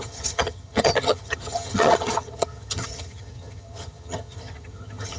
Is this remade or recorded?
remade